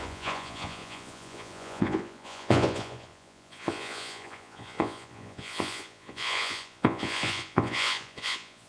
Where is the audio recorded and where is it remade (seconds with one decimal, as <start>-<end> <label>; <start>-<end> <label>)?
0.0-8.7 remade